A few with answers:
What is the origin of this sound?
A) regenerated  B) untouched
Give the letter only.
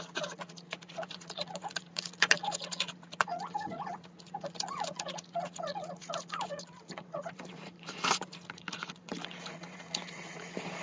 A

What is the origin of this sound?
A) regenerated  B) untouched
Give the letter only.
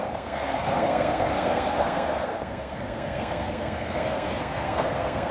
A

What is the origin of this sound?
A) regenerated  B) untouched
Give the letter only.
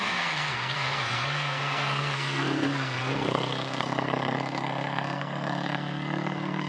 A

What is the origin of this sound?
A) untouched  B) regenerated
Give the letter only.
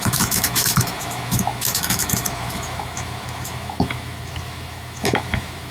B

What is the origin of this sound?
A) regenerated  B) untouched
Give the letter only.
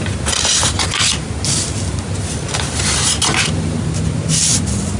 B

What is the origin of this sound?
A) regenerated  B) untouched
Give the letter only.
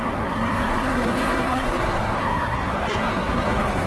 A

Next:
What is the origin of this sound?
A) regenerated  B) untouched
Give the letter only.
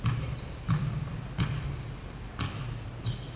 B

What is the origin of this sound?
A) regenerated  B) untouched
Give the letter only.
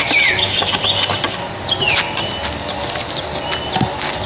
B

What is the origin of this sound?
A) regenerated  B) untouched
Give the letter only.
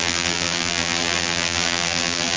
A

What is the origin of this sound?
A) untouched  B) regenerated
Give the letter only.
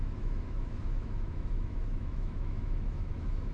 B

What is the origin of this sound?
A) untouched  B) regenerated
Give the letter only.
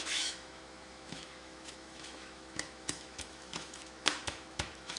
B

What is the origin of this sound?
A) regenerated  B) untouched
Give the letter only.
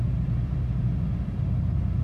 A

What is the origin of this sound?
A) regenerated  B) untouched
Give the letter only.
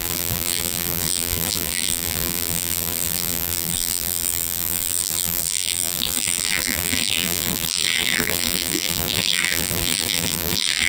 A